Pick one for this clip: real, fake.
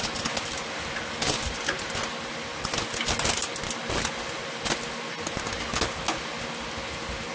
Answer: real